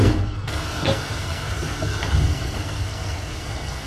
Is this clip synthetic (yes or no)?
yes